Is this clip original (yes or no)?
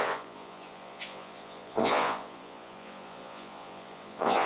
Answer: no